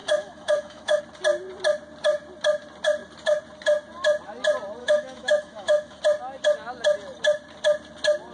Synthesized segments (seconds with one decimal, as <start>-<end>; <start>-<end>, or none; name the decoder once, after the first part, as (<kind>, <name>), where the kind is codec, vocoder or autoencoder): 0.0-1.0 (autoencoder, DAC-VAE); 4.8-6.0